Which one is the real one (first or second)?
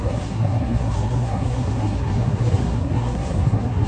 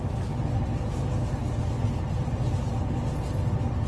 second